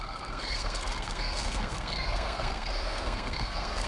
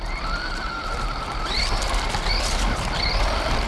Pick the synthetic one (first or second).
first